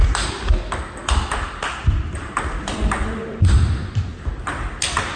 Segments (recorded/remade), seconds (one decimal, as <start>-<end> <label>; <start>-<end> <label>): 0.0-5.2 recorded